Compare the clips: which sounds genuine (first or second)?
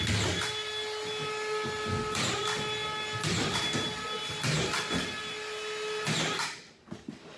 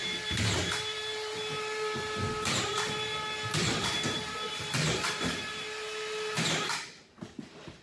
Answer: first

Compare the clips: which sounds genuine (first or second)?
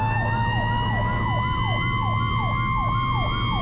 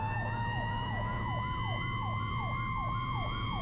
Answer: first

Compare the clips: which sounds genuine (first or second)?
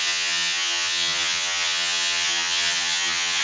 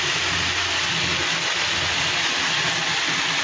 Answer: second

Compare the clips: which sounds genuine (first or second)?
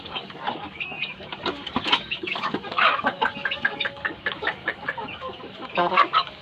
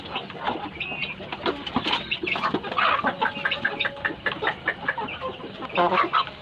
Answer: second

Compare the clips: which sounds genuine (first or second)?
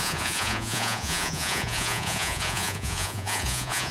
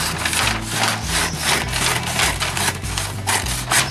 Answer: second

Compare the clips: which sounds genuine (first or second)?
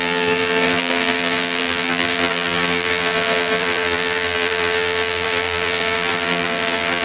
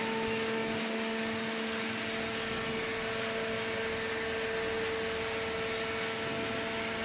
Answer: second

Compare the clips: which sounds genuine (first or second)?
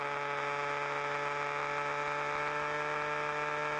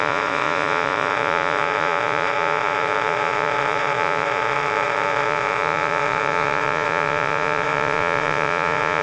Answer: first